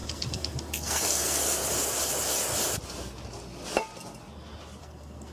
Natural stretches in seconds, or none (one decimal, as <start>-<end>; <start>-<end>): 1.6-4.8